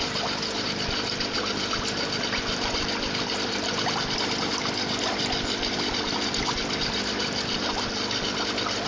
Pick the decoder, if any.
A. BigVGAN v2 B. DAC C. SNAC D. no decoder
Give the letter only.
A